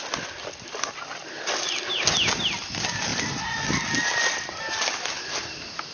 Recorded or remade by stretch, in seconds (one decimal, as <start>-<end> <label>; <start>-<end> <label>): 0.0-5.9 recorded